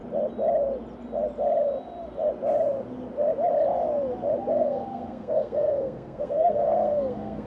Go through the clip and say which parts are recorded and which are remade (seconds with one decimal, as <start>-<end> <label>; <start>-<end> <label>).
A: 0.0-4.5 recorded; 4.5-7.5 remade